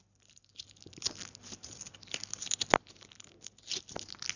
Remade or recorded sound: recorded